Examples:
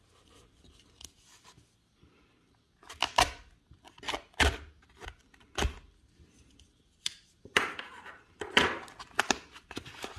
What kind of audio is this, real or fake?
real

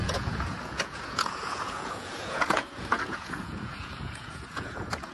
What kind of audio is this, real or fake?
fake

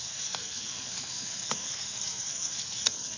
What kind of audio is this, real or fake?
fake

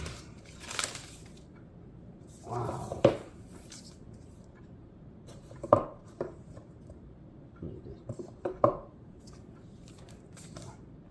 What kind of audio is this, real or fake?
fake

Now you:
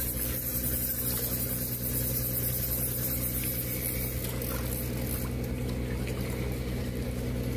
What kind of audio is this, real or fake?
real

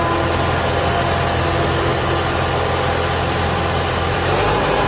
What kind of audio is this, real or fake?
real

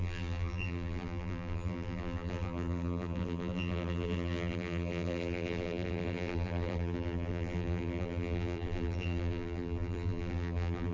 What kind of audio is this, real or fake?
fake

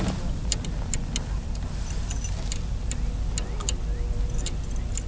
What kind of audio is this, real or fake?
real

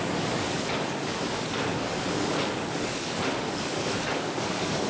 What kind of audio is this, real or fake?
fake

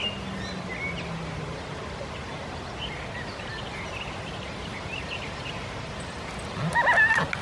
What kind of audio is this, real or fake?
real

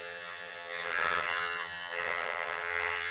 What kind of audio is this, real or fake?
fake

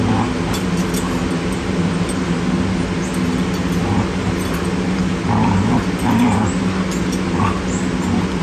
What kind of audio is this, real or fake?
real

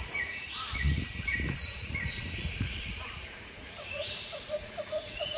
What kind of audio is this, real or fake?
fake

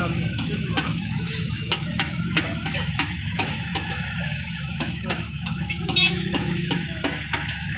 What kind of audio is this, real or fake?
fake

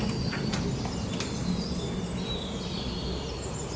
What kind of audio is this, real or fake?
real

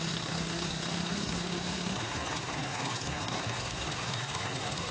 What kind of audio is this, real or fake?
fake